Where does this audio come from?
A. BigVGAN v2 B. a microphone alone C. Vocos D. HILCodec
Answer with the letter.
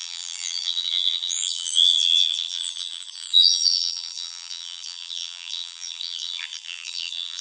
A